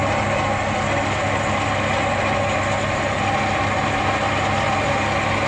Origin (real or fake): real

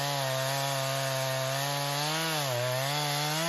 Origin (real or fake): real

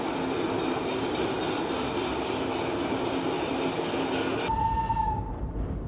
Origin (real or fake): real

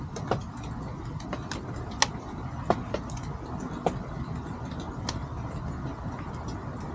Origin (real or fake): real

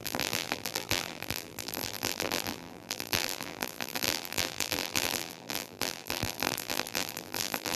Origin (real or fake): fake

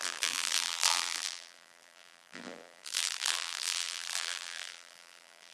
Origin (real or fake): fake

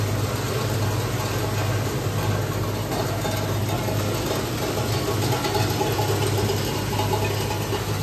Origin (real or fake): real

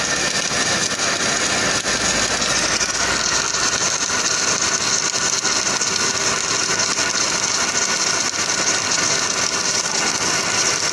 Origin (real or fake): real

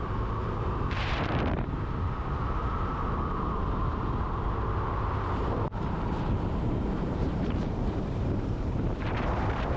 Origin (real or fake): fake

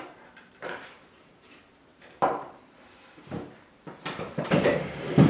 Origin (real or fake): fake